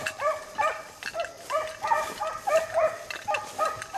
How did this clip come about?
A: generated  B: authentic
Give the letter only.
B